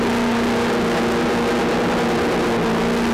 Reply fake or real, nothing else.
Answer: real